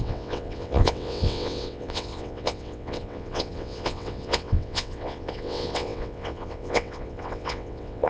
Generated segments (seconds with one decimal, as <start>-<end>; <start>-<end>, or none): 0.0-8.1

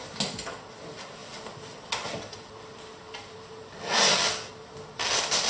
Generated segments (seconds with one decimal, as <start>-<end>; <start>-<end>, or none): 1.2-4.5

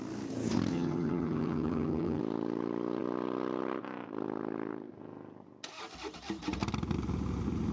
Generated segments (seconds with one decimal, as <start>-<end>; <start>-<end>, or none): 0.7-2.2

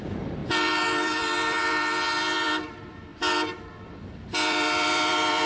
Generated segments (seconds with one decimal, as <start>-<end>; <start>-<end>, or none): 0.0-5.5

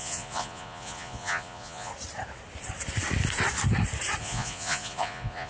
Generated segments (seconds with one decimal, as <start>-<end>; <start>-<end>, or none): 0.0-1.9; 4.2-5.5

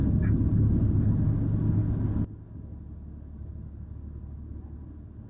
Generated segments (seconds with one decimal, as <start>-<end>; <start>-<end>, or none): none

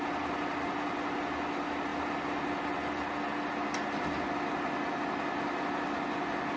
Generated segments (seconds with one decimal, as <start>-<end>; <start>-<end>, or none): none